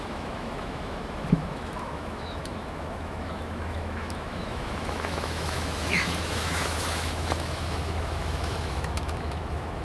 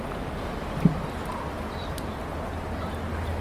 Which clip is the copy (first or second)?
first